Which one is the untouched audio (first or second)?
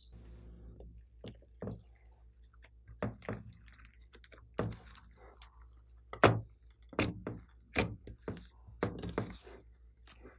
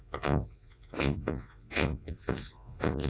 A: first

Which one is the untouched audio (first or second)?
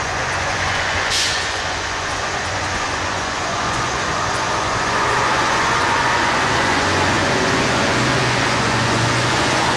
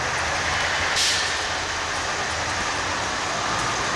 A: second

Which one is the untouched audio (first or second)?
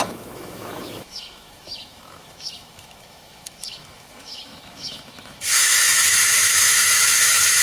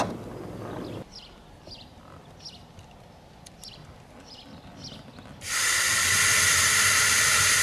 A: second